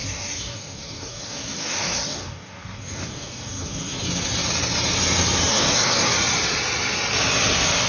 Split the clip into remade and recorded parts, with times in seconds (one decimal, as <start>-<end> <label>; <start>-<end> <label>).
0.0-4.1 remade; 4.1-5.5 recorded; 5.5-6.1 remade; 6.1-7.9 recorded